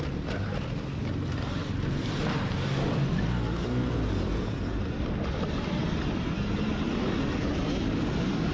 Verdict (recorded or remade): recorded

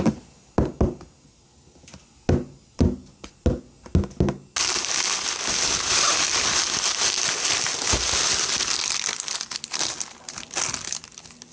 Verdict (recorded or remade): recorded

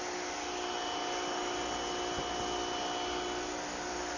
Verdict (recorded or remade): recorded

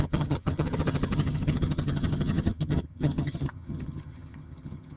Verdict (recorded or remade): remade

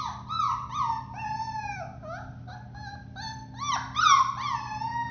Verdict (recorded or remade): recorded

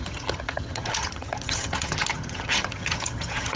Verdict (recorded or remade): remade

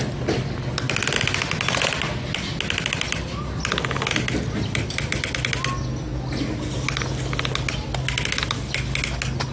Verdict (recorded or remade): recorded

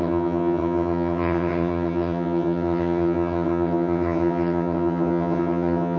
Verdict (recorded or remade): remade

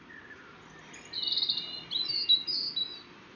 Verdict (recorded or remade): recorded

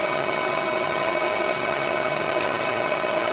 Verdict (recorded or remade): remade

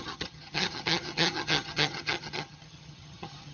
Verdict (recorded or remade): remade